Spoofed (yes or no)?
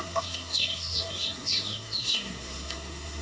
yes